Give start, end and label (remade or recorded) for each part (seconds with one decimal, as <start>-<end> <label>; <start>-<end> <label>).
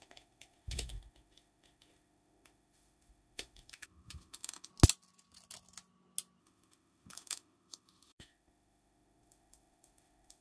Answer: 0.0-4.7 remade; 4.7-6.4 recorded; 6.4-10.4 remade